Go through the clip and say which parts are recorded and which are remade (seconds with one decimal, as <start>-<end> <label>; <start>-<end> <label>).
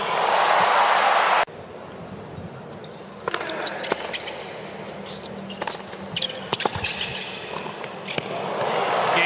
0.0-7.1 recorded; 7.1-7.7 remade; 7.7-9.3 recorded